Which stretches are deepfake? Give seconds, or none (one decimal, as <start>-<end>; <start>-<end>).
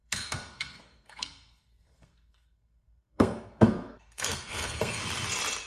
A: 0.0-5.0